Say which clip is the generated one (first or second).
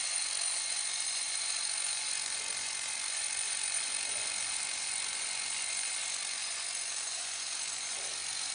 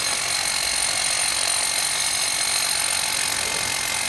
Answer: first